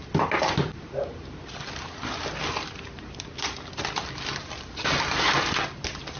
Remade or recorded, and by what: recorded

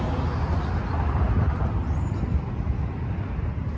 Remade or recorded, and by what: recorded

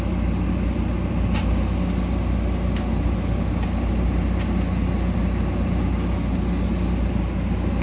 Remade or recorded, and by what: recorded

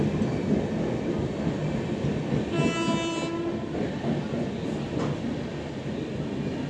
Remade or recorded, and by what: recorded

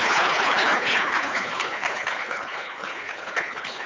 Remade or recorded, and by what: remade, codec, HILCodec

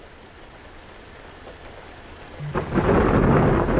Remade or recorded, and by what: recorded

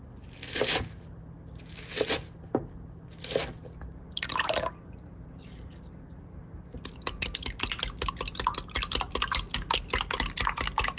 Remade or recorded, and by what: recorded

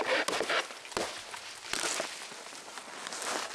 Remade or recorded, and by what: recorded